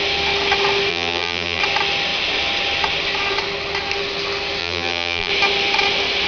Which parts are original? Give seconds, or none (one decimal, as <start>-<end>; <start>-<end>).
0.0-0.9; 1.6-4.6; 5.3-6.3